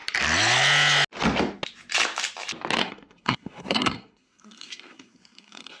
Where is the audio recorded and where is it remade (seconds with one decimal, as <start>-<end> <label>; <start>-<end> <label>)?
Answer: 0.0-2.8 recorded; 2.8-5.8 remade

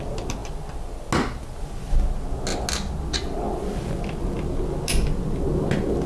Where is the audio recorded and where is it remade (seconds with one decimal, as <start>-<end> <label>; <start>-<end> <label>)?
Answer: 0.0-6.1 recorded